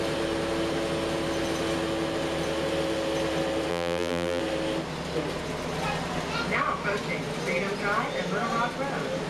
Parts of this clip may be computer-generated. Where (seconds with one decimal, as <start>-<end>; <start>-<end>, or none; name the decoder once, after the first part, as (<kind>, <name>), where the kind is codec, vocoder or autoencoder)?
3.7-4.4 (vocoder, BigVGAN v2)